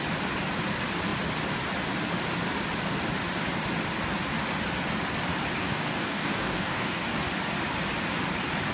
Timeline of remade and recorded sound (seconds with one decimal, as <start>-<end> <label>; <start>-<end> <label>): 0.0-5.6 recorded; 5.6-7.0 remade; 7.0-8.7 recorded